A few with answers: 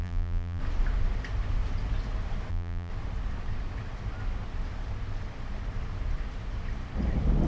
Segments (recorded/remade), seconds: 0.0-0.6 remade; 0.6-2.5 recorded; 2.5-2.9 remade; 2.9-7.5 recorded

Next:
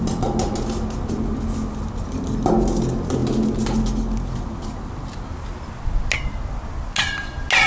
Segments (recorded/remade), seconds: 0.0-7.7 recorded

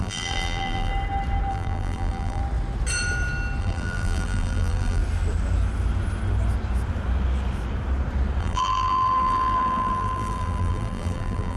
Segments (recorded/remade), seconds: 0.0-0.9 remade; 0.9-1.5 recorded; 1.5-2.4 remade; 2.4-3.6 recorded; 3.6-5.0 remade; 5.0-8.4 recorded; 8.4-11.6 remade

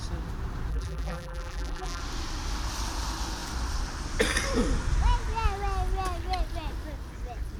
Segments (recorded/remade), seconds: 0.0-0.7 recorded; 0.7-2.0 remade; 2.0-7.6 recorded

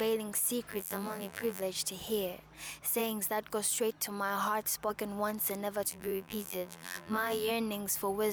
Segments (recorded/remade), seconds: 0.0-0.7 recorded; 0.7-1.6 remade; 1.6-5.9 recorded; 5.9-7.5 remade; 7.5-8.3 recorded